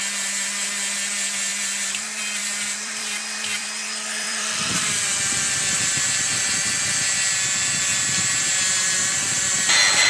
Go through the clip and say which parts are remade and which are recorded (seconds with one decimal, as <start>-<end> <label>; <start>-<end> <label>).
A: 0.0-1.5 recorded; 1.5-5.0 remade; 5.0-10.1 recorded